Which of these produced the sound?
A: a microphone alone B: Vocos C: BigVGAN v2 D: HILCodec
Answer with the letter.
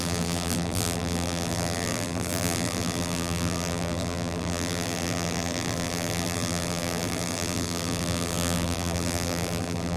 C